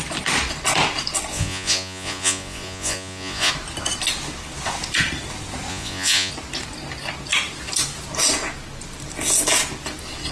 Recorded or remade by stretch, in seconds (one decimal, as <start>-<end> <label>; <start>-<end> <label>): 0.0-1.3 recorded; 1.3-3.5 remade; 3.5-5.7 recorded; 5.7-6.3 remade; 6.3-10.3 recorded